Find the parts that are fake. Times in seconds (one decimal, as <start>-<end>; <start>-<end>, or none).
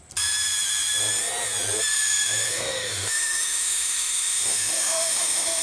1.9-5.6